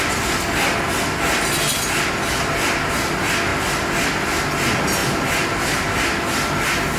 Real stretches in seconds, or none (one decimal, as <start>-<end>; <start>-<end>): 0.0-7.0